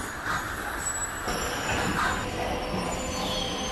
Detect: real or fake real